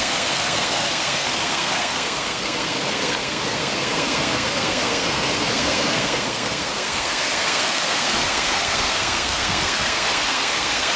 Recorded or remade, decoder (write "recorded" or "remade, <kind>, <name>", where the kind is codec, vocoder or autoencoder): remade, codec, SNAC